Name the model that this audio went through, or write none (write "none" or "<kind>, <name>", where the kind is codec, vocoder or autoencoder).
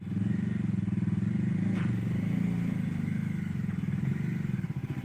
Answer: none